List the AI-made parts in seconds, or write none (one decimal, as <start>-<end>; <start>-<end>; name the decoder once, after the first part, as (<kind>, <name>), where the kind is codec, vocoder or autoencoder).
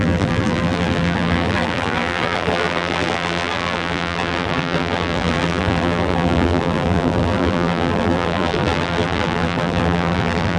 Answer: 0.0-10.6 (vocoder, BigVGAN v2)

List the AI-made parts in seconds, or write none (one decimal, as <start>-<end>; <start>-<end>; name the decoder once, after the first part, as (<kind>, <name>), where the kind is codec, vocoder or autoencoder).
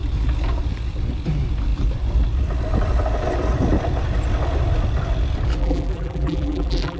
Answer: 5.6-7.0 (vocoder, BigVGAN v2)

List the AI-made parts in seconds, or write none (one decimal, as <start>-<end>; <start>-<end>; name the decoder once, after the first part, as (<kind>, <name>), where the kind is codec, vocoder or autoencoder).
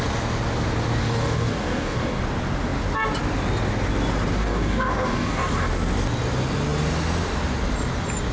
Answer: 1.0-2.2 (codec, DAC); 4.4-5.7